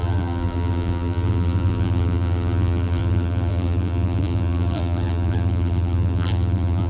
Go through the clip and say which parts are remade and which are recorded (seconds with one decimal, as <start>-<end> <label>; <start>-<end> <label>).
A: 0.0-6.9 remade